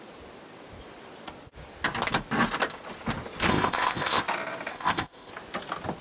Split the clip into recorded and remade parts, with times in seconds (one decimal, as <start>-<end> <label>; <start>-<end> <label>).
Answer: 0.0-3.5 recorded; 3.5-4.2 remade; 4.2-4.7 recorded; 4.7-5.3 remade; 5.3-6.0 recorded